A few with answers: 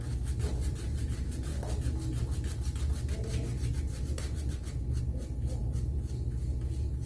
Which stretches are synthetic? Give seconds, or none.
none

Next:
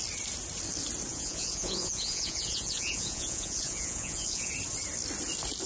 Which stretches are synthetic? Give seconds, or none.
1.1-4.5

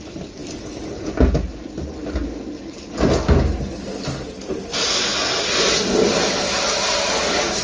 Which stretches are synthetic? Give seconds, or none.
none

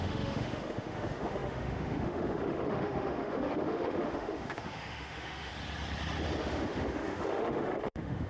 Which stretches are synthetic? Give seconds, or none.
0.0-5.5; 6.4-8.3

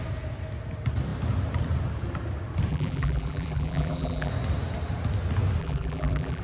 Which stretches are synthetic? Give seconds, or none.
2.7-4.3; 5.6-6.4

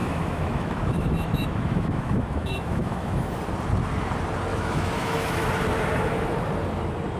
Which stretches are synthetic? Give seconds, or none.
0.0-3.3; 4.5-5.5

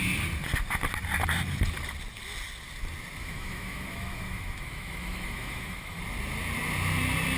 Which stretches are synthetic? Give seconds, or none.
3.2-6.0